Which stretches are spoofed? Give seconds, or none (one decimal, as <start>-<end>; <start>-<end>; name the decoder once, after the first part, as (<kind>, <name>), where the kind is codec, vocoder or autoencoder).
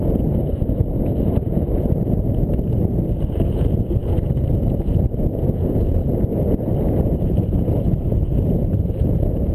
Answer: 0.0-2.4 (vocoder, Vocos); 3.2-4.0; 4.9-6.0; 7.2-9.5